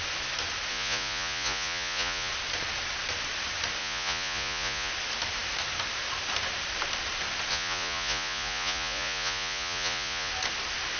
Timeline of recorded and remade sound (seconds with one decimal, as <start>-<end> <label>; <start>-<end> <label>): 0.0-0.7 recorded; 0.7-2.3 remade; 2.3-3.8 recorded; 3.8-4.9 remade; 4.9-7.5 recorded; 7.5-10.3 remade; 10.3-11.0 recorded